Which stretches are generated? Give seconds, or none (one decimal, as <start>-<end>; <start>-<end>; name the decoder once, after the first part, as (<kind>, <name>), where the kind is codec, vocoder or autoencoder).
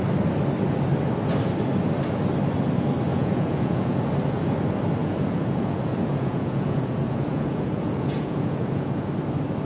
3.1-4.0 (vocoder, Vocos); 5.0-9.1